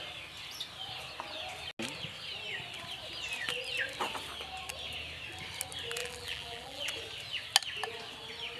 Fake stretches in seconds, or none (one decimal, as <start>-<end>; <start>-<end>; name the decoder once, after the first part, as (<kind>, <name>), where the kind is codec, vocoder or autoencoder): 6.0-6.8 (vocoder, BigVGAN v2)